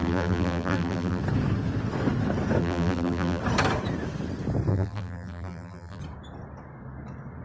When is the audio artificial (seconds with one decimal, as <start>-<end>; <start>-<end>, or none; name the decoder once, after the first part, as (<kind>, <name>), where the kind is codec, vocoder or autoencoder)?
0.0-1.2 (vocoder, BigVGAN v2); 2.6-3.4; 4.7-6.0